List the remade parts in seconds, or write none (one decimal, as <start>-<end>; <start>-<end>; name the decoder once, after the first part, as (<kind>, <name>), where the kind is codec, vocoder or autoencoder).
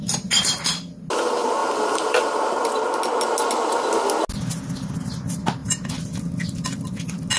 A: 1.6-2.8 (vocoder, BigVGAN v2); 5.6-6.1